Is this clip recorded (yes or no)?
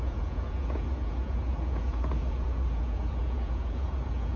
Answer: no